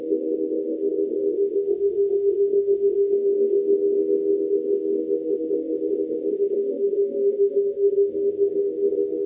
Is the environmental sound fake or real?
fake